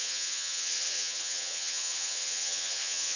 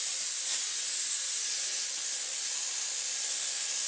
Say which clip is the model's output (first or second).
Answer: first